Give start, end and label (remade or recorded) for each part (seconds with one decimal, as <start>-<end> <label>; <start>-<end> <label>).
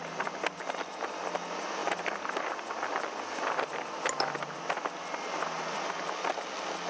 0.0-6.9 recorded